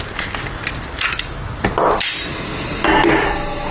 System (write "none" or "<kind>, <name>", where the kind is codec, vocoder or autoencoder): none